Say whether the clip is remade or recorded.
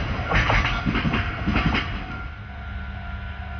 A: recorded